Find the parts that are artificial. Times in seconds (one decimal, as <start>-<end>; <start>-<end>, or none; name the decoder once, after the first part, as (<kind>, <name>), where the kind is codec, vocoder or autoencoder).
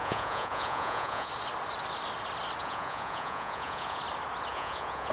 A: 0.0-1.3 (vocoder, Vocos); 2.6-4.0; 4.5-5.1